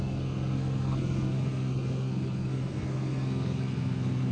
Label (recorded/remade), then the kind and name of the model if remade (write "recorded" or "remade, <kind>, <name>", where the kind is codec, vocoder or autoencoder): remade, codec, SNAC